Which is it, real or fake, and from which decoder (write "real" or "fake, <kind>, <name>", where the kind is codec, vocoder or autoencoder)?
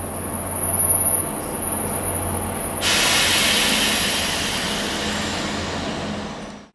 real